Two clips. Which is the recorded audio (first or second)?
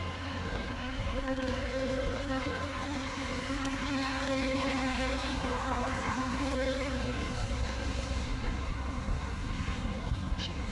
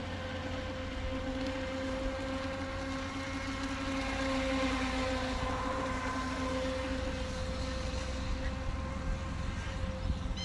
second